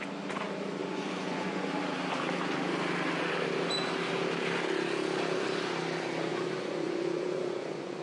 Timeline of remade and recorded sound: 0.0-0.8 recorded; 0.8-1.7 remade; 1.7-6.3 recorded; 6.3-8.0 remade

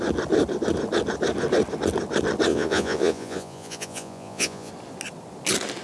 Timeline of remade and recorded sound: 0.0-2.5 recorded; 2.5-4.7 remade; 4.7-5.8 recorded

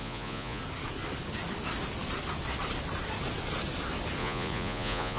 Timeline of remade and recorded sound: 0.0-0.6 remade; 0.6-4.2 recorded; 4.2-5.2 remade

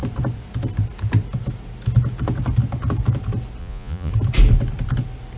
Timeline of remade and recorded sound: 0.0-3.6 recorded; 3.6-4.1 remade; 4.1-5.4 recorded

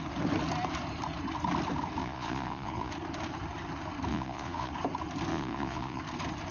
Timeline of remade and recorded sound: 0.0-2.0 recorded; 2.0-2.9 remade; 2.9-4.1 recorded; 4.1-4.7 remade; 4.7-5.3 recorded; 5.3-6.0 remade; 6.0-6.5 recorded